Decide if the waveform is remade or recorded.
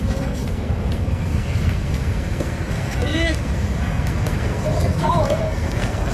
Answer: remade